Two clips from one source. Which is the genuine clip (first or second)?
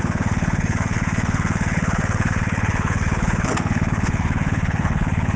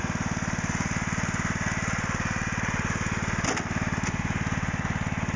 second